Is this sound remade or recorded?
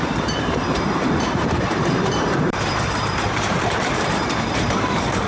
remade